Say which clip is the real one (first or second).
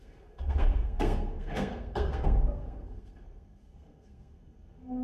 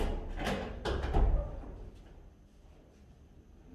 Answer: second